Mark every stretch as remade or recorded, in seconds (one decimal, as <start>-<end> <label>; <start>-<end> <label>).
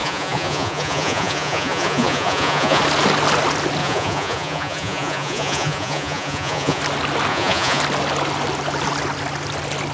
0.0-2.8 remade; 2.8-3.8 recorded; 3.8-6.8 remade; 6.8-7.3 recorded; 7.3-7.8 remade; 7.8-9.9 recorded